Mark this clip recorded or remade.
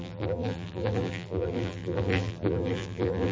remade